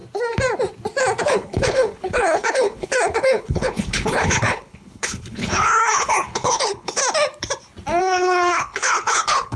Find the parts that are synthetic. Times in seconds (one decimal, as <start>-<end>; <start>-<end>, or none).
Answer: 1.2-7.0; 8.0-9.6